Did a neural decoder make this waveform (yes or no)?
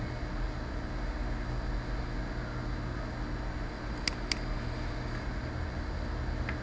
no